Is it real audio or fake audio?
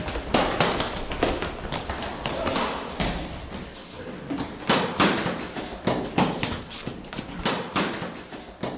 real